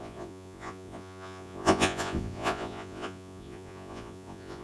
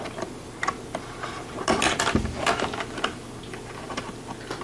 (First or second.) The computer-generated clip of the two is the first